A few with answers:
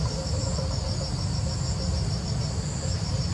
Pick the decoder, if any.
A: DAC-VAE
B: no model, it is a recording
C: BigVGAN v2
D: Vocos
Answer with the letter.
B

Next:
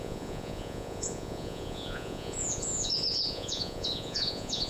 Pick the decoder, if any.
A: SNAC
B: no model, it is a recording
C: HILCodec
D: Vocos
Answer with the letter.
D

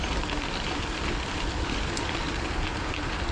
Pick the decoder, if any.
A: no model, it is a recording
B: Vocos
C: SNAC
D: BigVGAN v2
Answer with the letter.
A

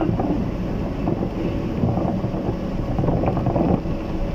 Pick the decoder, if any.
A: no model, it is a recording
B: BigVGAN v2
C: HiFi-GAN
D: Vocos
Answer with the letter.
A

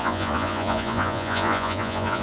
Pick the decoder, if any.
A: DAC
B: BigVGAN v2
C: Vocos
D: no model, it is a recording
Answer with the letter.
C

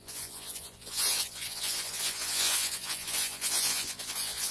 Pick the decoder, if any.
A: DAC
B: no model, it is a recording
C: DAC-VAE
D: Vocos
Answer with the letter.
D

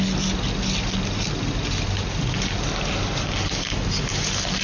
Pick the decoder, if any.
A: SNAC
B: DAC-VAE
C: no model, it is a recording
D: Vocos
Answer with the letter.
C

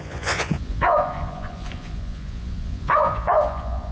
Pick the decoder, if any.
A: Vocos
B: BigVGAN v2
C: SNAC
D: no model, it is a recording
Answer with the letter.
A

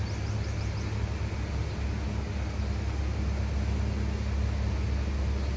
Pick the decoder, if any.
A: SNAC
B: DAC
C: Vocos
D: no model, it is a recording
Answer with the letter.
D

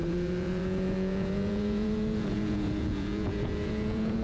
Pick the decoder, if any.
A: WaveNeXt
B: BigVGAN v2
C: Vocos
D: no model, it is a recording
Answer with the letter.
C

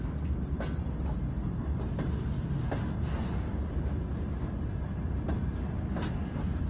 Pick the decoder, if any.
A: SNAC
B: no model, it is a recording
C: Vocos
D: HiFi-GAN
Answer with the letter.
B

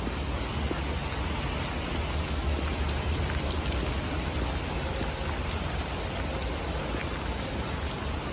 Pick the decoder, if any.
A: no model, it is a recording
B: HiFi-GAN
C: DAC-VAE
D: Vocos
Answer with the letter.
A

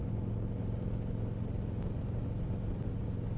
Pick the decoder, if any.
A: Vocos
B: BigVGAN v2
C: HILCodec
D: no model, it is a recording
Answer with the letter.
D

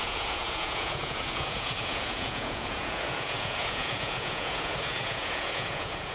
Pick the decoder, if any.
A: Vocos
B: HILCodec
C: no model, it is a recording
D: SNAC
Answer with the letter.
A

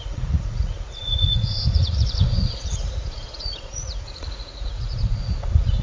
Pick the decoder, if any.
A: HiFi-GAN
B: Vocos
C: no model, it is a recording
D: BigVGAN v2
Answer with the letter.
B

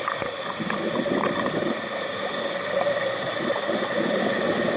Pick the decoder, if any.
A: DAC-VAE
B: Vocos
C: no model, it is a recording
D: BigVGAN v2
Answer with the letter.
C